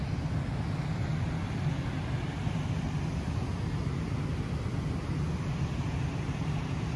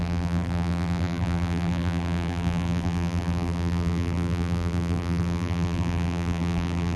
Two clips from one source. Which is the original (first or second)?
first